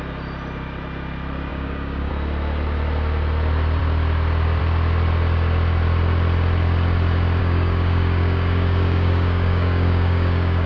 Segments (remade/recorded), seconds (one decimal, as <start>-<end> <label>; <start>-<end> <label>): 0.0-1.5 recorded; 1.5-2.1 remade; 2.1-7.4 recorded; 7.4-10.7 remade